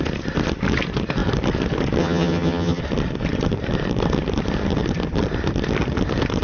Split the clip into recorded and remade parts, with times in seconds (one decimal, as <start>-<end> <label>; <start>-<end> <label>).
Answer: 0.0-2.0 recorded; 2.0-2.8 remade; 2.8-6.4 recorded